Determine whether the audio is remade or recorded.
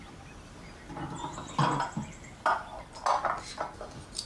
recorded